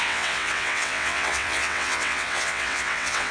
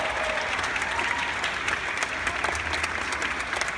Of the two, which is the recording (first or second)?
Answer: second